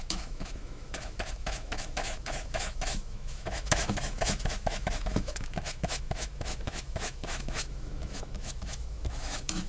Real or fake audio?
fake